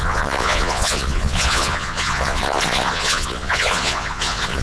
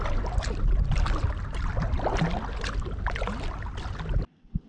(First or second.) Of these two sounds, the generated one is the first